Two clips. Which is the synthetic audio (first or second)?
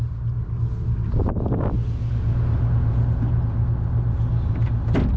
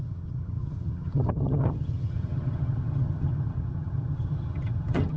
second